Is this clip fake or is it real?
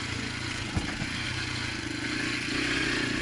fake